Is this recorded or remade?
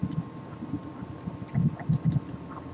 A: recorded